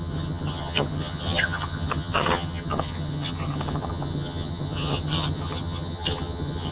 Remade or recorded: remade